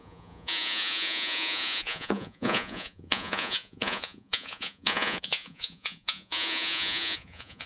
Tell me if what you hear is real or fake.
fake